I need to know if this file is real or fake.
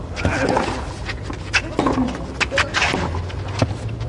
real